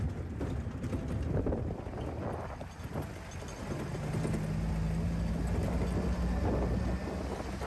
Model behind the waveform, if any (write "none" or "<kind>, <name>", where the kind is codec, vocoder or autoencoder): none